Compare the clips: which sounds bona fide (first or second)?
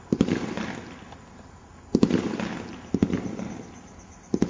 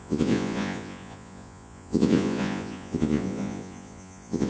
first